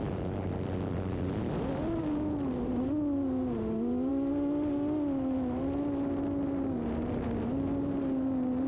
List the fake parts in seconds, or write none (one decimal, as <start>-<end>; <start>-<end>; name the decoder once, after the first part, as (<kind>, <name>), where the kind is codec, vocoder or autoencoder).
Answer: none